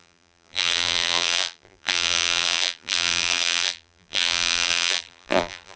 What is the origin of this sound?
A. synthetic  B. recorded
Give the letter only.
A